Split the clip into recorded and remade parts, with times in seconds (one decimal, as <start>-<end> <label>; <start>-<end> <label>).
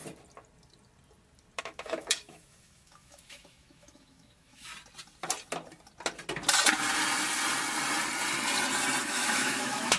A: 0.0-1.6 recorded; 1.6-4.7 remade; 4.7-9.0 recorded; 9.0-10.0 remade